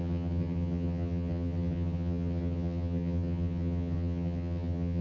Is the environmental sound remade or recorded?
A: remade